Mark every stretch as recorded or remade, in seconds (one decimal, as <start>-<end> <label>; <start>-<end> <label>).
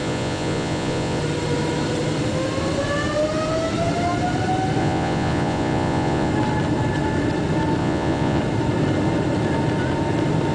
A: 0.0-1.2 remade; 1.2-4.8 recorded; 4.8-6.3 remade; 6.3-7.8 recorded; 7.8-8.4 remade; 8.4-10.5 recorded